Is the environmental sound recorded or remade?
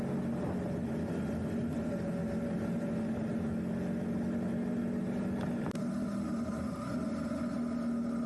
recorded